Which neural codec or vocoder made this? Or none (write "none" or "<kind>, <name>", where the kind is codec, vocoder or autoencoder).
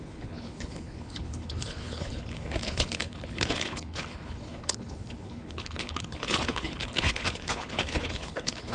codec, HILCodec